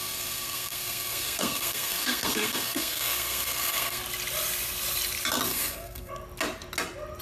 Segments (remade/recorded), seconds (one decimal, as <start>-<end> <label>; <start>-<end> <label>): 0.0-4.0 remade; 4.0-5.5 recorded; 5.5-6.1 remade; 6.1-7.2 recorded